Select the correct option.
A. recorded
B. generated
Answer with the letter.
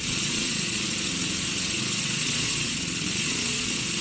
B